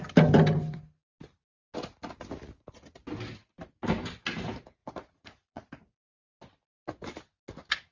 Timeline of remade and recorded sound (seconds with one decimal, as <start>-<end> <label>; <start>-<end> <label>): 0.0-4.8 recorded; 4.8-5.7 remade; 5.7-7.9 recorded